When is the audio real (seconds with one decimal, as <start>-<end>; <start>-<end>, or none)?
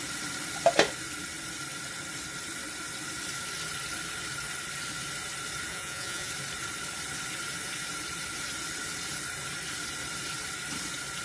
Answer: 0.0-5.7; 6.3-11.2